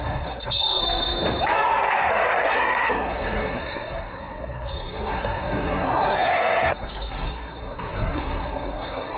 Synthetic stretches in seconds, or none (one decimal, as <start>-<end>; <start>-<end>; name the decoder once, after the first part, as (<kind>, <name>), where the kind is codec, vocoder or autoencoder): 0.0-0.8 (codec, SNAC); 2.1-9.2